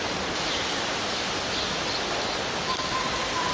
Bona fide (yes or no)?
yes